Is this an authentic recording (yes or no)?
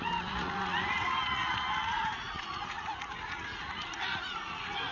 no